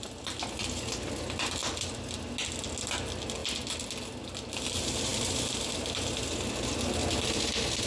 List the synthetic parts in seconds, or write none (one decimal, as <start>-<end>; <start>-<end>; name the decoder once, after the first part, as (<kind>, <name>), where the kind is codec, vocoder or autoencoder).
1.6-2.3 (vocoder, BigVGAN v2); 5.1-5.7; 7.0-7.5